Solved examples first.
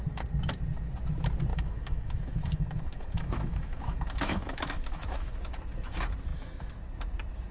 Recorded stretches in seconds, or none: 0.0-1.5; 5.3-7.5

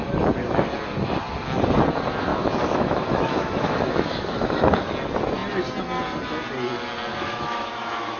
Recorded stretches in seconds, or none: 0.0-2.3; 4.9-7.1

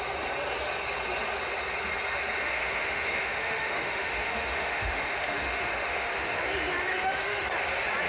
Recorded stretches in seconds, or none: 0.0-2.4; 6.4-6.9; 7.5-8.1

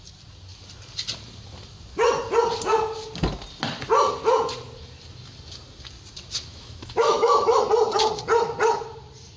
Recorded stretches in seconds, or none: 0.0-6.5; 7.6-9.4

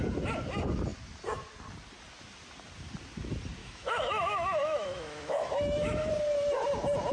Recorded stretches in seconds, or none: 0.0-3.6; 6.1-7.1

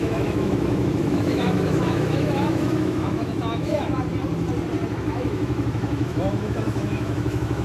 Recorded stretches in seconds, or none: 4.1-4.9

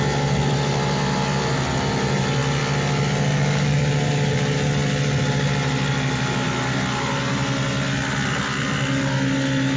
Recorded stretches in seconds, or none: 0.0-9.8